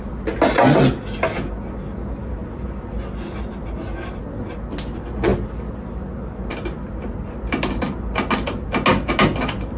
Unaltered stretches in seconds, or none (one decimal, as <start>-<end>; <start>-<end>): 0.0-9.8